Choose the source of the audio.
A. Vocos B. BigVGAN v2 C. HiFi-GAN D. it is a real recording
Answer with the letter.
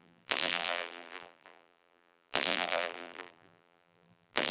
B